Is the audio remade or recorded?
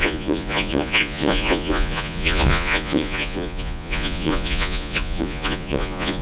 remade